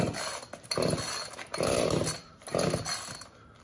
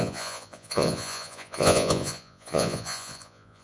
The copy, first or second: second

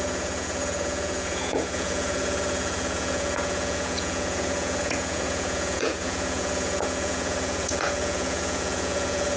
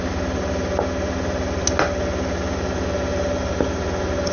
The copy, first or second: first